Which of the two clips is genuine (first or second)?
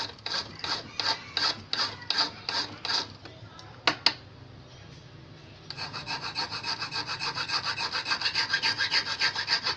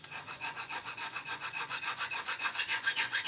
first